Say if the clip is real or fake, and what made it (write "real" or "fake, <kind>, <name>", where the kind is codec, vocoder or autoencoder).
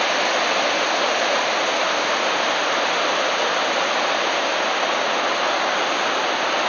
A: real